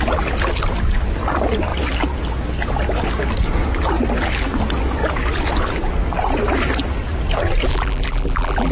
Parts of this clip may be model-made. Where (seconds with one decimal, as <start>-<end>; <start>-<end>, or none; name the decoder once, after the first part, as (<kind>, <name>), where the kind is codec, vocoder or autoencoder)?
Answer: 7.7-8.7 (vocoder, BigVGAN v2)